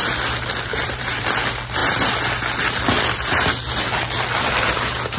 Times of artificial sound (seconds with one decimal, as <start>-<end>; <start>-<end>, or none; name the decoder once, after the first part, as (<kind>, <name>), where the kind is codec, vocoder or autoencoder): 0.7-1.2 (vocoder, BigVGAN v2)